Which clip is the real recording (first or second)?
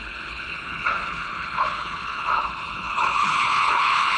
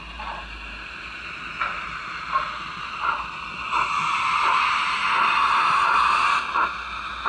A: second